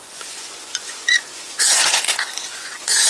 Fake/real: fake